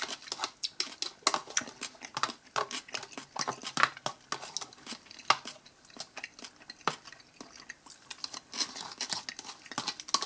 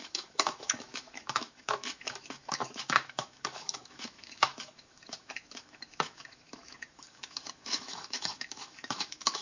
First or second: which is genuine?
first